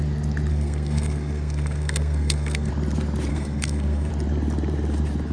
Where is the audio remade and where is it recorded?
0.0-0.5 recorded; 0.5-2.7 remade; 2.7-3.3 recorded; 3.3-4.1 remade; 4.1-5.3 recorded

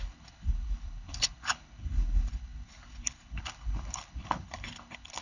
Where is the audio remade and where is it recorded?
0.0-5.2 remade

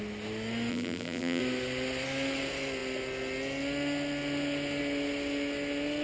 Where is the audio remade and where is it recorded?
0.0-0.7 recorded; 0.7-1.4 remade; 1.4-6.0 recorded

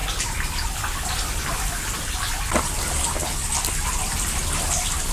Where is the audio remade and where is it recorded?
0.0-5.1 recorded

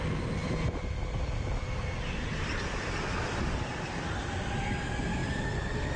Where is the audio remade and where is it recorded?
0.0-6.0 recorded

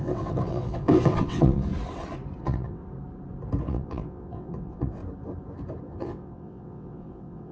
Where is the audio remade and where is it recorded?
0.0-1.7 remade; 1.7-2.4 recorded; 2.4-2.8 remade; 2.8-3.6 recorded; 3.6-5.0 remade; 5.0-5.8 recorded; 5.8-7.5 remade